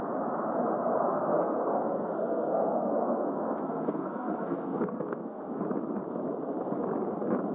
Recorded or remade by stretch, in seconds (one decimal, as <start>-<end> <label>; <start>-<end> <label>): 0.0-1.1 recorded; 1.1-5.6 remade; 5.6-7.5 recorded